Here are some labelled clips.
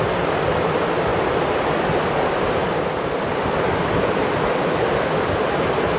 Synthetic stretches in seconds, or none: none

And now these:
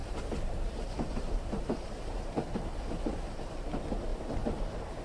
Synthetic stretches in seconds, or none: 0.0-3.0 (vocoder, BigVGAN v2); 4.1-5.0

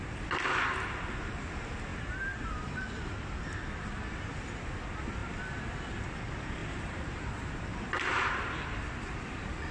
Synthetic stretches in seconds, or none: 1.9-2.4 (vocoder, BigVGAN v2); 6.6-8.4

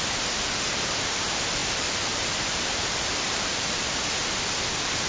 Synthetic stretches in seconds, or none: 1.6-4.4 (vocoder, BigVGAN v2)

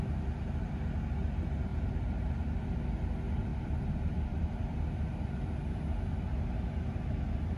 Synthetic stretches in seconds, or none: 1.7-2.8 (vocoder, BigVGAN v2); 3.5-4.5

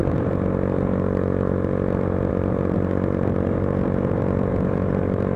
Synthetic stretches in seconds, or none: 0.0-5.4 (vocoder, BigVGAN v2)